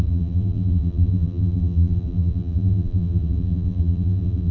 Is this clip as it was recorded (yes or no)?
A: no